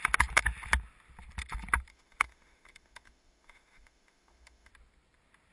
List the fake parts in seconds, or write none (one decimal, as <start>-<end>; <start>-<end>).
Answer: 1.9-4.7